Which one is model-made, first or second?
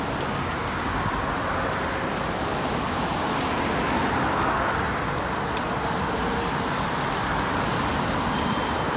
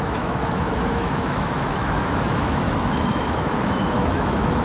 second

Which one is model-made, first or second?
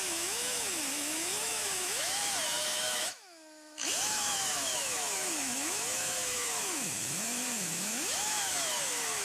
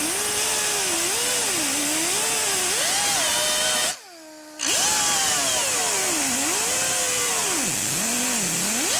first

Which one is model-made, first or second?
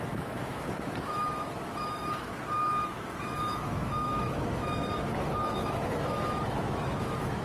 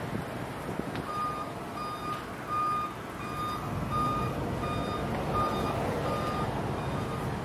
first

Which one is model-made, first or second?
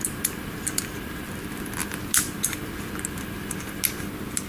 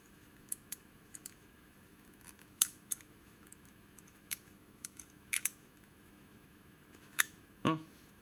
second